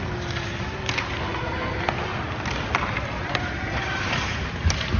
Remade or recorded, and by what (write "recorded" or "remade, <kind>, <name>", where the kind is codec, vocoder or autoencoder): recorded